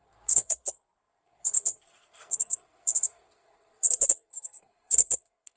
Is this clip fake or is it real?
fake